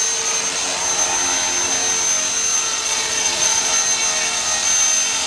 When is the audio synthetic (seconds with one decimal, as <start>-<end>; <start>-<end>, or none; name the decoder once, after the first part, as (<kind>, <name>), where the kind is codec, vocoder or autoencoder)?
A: 2.7-3.7 (vocoder, Vocos)